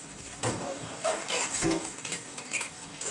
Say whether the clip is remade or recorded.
remade